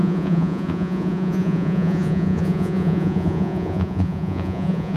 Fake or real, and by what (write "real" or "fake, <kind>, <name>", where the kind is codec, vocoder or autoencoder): fake, vocoder, Vocos